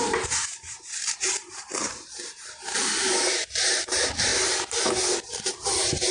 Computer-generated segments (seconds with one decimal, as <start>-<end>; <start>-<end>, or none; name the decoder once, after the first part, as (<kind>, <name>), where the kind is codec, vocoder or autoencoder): 0.0-4.3 (vocoder, BigVGAN v2); 5.4-6.1